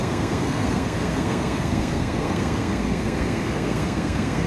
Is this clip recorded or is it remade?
remade